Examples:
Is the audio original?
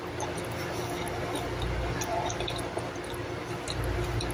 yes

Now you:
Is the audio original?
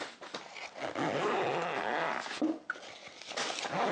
yes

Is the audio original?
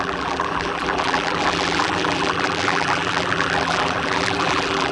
no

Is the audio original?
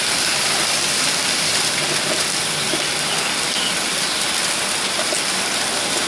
no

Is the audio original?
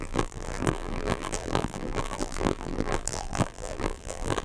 no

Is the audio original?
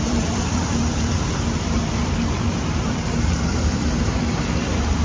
no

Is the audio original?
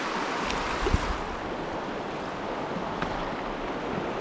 yes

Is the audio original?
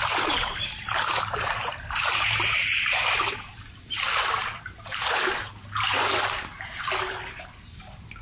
no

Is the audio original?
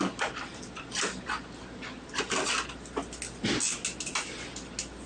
yes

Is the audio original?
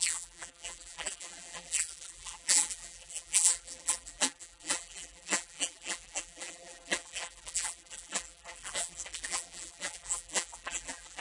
no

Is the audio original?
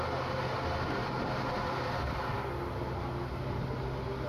yes